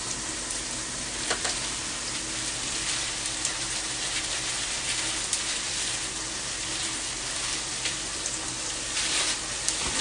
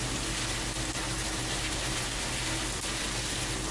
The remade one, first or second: first